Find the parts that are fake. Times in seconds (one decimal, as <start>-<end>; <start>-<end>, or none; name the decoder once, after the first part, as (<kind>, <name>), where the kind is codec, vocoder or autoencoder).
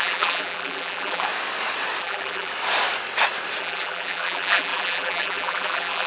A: 0.0-1.3 (vocoder, BigVGAN v2); 2.0-2.5; 3.6-6.1